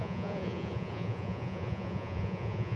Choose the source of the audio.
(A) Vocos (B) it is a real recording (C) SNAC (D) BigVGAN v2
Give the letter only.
A